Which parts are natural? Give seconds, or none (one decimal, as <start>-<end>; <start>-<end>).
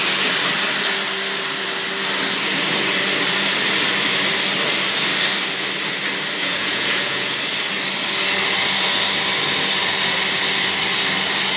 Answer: 0.0-6.4; 7.3-11.6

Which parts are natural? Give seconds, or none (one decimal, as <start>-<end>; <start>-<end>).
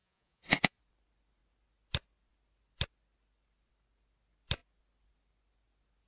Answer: 0.8-6.1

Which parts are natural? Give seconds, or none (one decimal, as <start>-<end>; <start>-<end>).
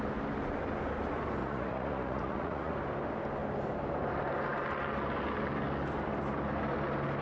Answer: 0.0-1.4; 2.7-7.2